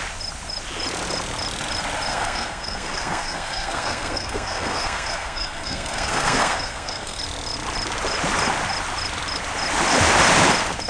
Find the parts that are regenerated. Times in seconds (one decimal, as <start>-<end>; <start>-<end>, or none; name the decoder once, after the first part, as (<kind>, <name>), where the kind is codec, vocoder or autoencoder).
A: 2.1-7.2 (codec, SNAC)

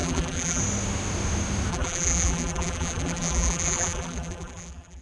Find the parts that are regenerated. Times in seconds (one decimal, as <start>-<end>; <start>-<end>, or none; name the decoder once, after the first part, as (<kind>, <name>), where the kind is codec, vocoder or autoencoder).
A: 0.0-0.6 (vocoder, BigVGAN v2); 1.7-5.0

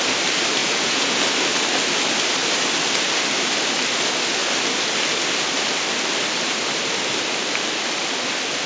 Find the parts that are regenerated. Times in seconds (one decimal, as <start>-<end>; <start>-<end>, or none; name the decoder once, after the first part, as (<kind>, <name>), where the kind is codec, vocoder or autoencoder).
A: 0.6-1.2 (vocoder, Vocos)

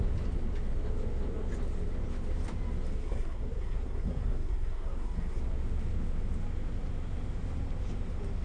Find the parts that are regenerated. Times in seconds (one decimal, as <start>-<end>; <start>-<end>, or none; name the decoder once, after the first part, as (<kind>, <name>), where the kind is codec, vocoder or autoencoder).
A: 3.0-5.4 (codec, SNAC)

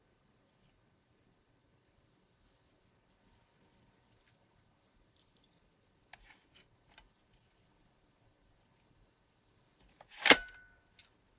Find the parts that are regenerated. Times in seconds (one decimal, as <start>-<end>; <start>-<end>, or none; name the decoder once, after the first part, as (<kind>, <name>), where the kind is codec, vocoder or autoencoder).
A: none

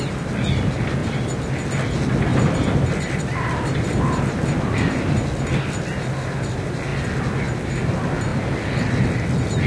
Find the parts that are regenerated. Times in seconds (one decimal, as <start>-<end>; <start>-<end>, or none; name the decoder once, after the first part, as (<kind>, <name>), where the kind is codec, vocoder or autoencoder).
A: 1.0-1.7 (vocoder, BigVGAN v2); 2.3-4.9